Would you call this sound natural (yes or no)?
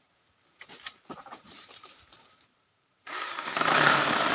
no